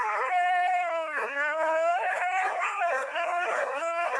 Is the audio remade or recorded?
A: remade